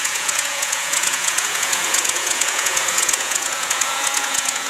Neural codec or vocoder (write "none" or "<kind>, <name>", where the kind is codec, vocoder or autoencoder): vocoder, Vocos